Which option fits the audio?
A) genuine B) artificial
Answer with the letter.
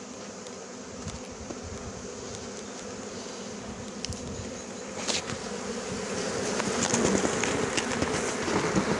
A